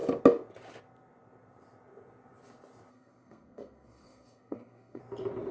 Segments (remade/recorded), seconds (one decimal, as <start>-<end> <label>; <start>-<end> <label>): 0.0-2.9 recorded; 2.9-5.0 remade; 5.0-5.5 recorded